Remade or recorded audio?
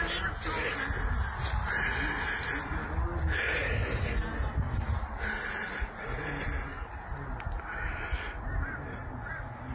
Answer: recorded